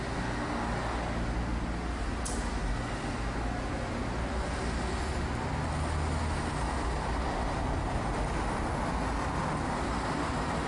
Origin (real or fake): real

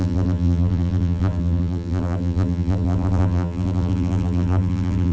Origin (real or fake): fake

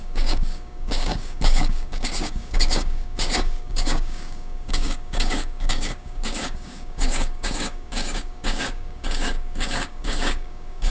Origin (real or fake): fake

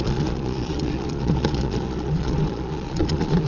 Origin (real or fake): fake